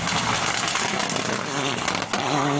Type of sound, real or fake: real